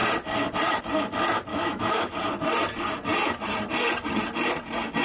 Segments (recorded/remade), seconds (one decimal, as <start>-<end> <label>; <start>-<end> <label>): 0.0-1.5 recorded; 1.5-2.1 remade; 2.1-5.0 recorded